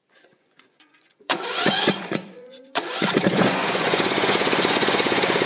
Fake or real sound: fake